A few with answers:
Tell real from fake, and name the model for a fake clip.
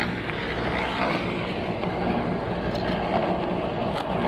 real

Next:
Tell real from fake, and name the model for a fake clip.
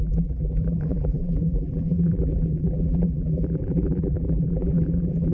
fake, vocoder, BigVGAN v2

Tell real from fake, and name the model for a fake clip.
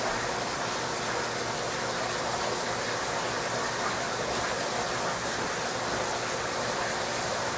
real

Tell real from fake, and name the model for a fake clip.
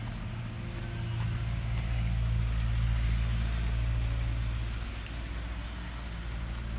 real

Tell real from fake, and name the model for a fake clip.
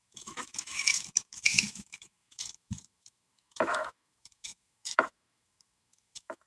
fake, autoencoder, DAC-VAE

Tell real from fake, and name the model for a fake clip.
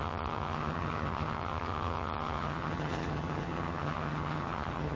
fake, vocoder, HiFi-GAN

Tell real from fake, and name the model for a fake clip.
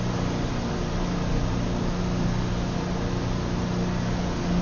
real